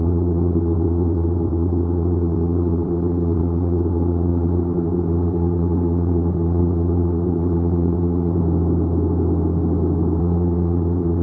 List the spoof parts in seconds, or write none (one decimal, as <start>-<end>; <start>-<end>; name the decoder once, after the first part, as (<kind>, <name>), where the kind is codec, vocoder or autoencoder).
0.0-8.4 (vocoder, WaveNeXt); 10.2-11.2